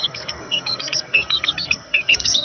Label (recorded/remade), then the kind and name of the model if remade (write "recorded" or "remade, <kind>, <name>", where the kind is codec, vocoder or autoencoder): remade, codec, SNAC